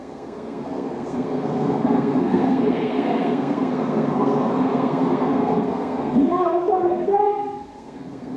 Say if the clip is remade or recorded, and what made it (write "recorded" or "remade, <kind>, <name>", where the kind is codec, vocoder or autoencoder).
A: remade, codec, SNAC